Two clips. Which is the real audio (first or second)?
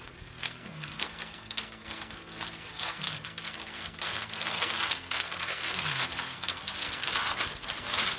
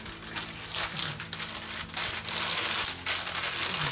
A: second